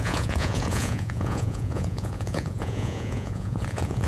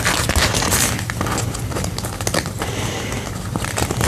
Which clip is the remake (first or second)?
first